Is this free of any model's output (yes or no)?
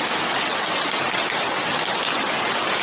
yes